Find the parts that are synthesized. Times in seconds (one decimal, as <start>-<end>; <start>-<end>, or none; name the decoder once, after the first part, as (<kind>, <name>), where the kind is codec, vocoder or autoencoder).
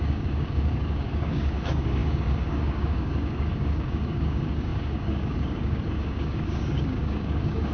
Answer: 0.0-7.7 (codec, DAC)